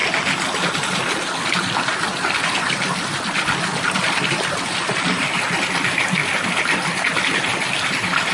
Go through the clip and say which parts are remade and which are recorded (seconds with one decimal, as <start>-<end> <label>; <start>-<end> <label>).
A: 0.0-8.3 recorded